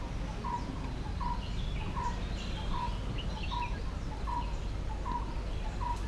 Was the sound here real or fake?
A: real